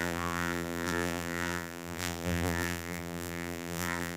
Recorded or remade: remade